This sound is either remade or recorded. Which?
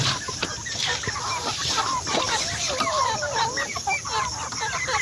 remade